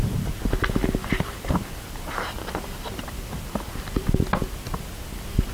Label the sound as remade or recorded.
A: recorded